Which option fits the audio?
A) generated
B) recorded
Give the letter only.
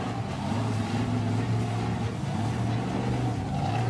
B